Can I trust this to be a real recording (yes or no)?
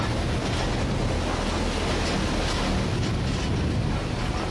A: yes